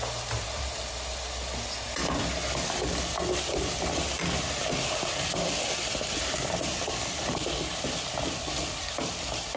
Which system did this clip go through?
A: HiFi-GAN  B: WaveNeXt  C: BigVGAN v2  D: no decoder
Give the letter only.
D